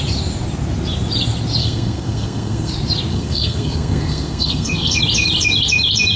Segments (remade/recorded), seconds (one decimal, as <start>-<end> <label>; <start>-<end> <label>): 0.0-1.6 recorded; 1.6-2.7 remade; 2.7-3.1 recorded; 3.1-5.0 remade; 5.0-6.2 recorded